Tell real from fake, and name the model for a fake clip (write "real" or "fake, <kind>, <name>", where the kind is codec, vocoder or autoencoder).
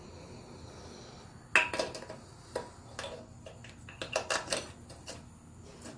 real